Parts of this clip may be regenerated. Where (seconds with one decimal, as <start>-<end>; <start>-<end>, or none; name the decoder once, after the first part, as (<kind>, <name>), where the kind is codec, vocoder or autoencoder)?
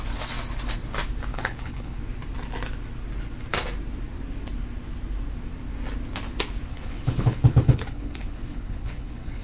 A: 1.3-2.0 (codec, HILCodec); 6.7-9.4